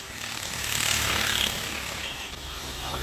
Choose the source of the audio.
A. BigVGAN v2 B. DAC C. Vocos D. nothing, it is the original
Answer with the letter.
B